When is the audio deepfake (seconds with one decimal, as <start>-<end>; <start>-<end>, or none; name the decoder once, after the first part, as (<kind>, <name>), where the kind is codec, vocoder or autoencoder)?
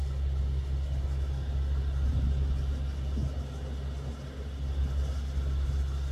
none